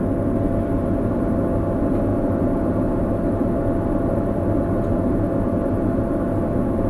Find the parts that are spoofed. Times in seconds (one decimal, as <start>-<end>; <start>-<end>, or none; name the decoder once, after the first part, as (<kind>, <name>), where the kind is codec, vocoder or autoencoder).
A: none